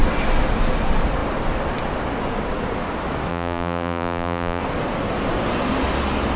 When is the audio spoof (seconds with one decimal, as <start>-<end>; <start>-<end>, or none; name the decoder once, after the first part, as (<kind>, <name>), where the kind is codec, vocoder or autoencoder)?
3.3-4.6 (vocoder, BigVGAN v2)